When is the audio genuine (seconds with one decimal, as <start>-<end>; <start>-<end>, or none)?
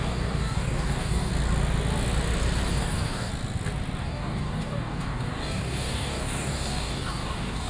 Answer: 1.3-2.7; 3.3-4.0